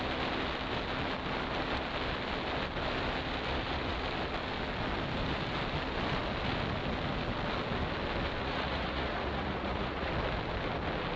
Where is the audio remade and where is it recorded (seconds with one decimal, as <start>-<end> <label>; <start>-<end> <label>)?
0.0-8.4 recorded; 8.4-10.1 remade; 10.1-11.2 recorded